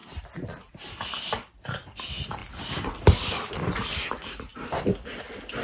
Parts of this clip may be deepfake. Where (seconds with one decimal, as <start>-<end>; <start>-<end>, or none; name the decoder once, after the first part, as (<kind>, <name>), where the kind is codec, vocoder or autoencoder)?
none